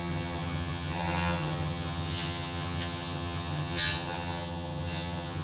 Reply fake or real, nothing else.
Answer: fake